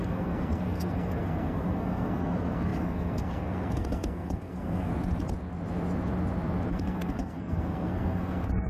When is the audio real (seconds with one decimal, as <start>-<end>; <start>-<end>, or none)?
4.9-6.7